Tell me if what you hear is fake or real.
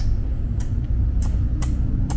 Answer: real